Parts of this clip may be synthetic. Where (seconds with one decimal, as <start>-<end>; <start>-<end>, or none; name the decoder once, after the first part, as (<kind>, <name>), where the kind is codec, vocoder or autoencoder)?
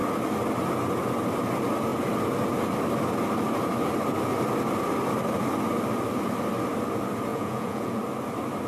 7.3-8.0 (vocoder, Vocos)